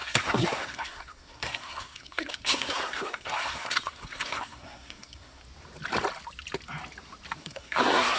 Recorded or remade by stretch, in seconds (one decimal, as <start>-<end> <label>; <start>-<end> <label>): 0.0-5.4 remade; 5.4-7.4 recorded; 7.4-8.2 remade